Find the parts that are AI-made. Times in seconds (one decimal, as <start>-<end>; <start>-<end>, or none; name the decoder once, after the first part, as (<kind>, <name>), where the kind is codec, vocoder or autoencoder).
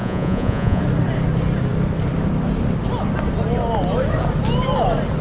0.0-0.8 (vocoder, Vocos)